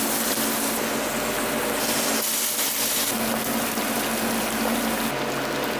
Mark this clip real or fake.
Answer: real